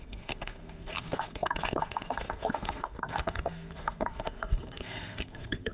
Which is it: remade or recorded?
remade